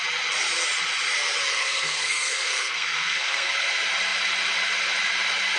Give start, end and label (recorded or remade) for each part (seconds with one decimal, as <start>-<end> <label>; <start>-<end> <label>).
0.0-1.5 recorded; 1.5-3.5 remade; 3.5-5.6 recorded